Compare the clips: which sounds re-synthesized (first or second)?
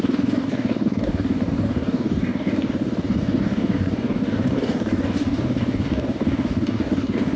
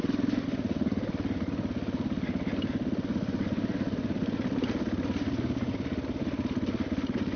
first